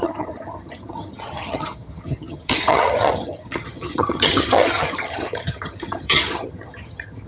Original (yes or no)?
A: no